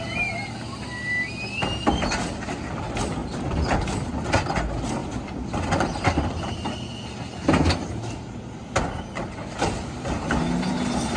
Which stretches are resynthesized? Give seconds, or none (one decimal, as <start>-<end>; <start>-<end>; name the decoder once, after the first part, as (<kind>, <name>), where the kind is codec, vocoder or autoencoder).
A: none